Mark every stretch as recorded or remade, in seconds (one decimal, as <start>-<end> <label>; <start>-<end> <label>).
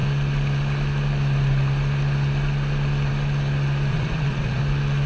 0.0-3.9 recorded; 3.9-4.6 remade; 4.6-5.1 recorded